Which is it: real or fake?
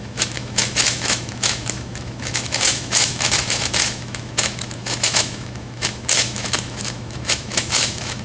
fake